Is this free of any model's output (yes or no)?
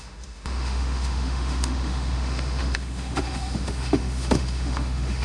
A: no